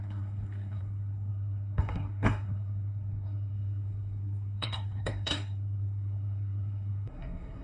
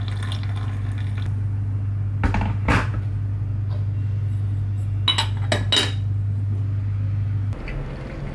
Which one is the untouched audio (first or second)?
second